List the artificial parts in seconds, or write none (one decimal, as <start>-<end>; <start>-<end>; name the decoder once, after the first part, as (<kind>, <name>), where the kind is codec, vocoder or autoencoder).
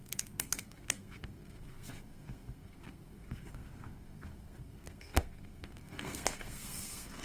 0.0-7.2 (codec, SNAC)